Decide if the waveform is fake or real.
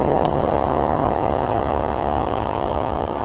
fake